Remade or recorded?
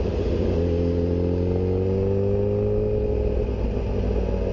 recorded